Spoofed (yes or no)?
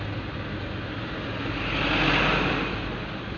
no